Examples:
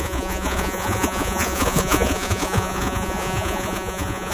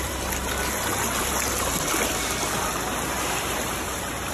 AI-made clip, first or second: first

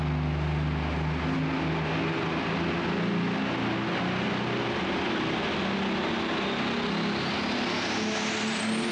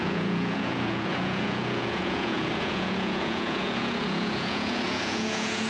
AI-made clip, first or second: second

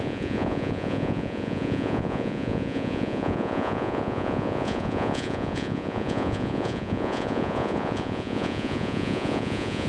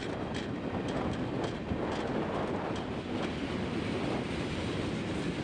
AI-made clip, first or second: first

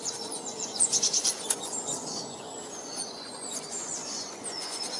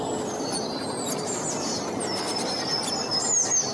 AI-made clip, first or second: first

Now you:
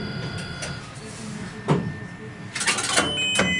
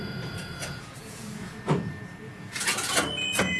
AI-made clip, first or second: second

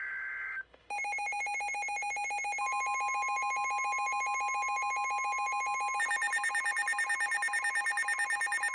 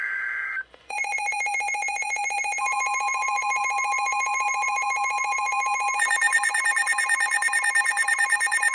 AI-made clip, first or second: second